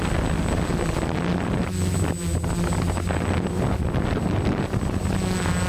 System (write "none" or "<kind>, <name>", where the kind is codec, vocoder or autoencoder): none